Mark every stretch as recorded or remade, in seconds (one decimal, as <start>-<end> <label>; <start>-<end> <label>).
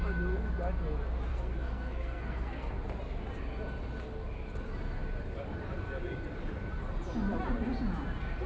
0.0-1.3 recorded; 1.3-2.7 remade; 2.7-8.5 recorded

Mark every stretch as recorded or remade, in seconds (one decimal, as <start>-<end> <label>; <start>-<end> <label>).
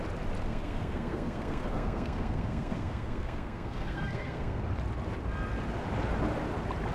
0.0-0.5 recorded; 0.5-4.6 remade; 4.6-6.9 recorded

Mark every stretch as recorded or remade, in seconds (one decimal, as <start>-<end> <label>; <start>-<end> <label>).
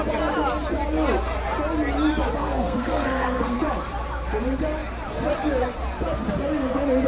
0.0-2.4 recorded; 2.4-3.6 remade; 3.6-7.1 recorded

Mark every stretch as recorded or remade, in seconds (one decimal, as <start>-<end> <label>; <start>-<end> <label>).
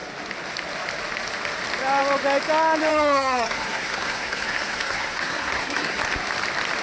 0.0-2.9 recorded; 2.9-6.0 remade; 6.0-6.8 recorded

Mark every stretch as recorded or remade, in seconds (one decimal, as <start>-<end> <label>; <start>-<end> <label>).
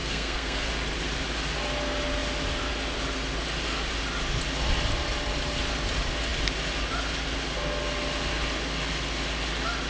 0.0-0.7 remade; 0.7-9.9 recorded